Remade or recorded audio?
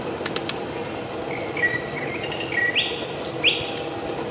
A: recorded